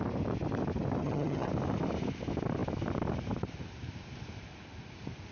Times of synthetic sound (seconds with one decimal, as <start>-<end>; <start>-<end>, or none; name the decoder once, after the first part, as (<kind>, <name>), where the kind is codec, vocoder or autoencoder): 1.0-1.5 (vocoder, HiFi-GAN)